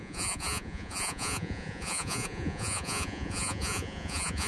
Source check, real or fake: fake